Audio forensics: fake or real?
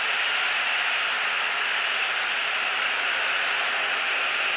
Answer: real